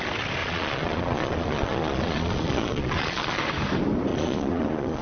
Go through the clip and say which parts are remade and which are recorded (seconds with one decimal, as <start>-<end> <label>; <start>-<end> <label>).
0.0-0.4 recorded; 0.4-3.4 remade; 3.4-4.1 recorded; 4.1-5.0 remade